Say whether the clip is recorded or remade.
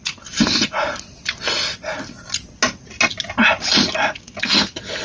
recorded